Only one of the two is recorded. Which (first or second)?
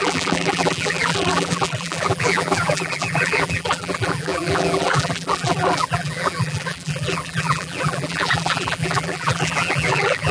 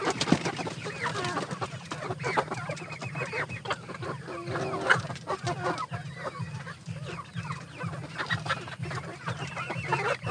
second